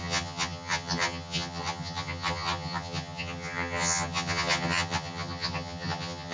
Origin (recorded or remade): remade